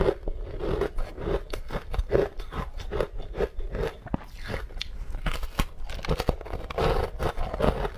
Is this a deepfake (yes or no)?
no